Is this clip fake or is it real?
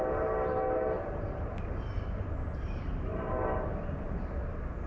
real